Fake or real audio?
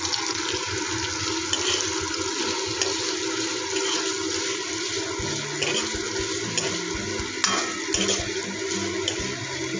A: real